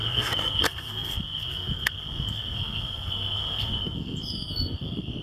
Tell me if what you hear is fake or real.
fake